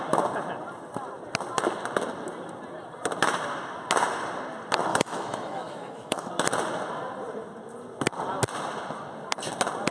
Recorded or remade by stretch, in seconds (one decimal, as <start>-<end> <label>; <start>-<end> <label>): 0.0-4.9 recorded; 4.9-6.3 remade; 6.3-9.9 recorded